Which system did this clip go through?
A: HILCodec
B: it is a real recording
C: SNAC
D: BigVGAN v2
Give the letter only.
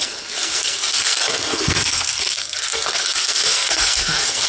C